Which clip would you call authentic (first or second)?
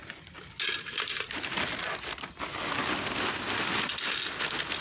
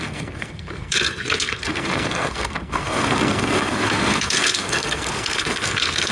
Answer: first